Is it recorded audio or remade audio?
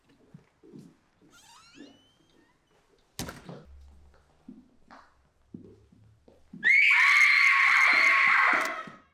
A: recorded